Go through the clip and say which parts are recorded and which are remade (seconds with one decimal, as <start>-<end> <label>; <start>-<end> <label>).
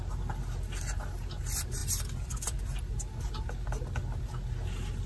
0.0-5.1 recorded